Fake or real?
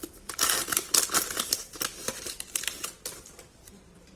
fake